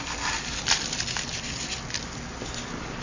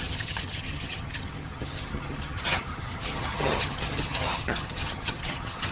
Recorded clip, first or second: first